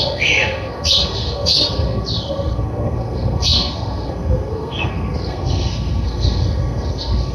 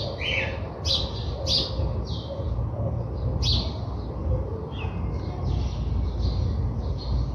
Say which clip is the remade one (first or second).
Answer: first